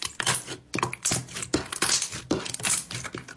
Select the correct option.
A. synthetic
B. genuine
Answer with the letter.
B